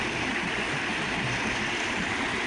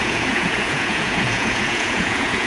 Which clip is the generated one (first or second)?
second